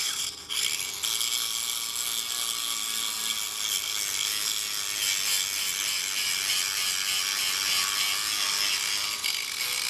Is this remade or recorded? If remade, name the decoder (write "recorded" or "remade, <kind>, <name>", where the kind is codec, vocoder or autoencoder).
recorded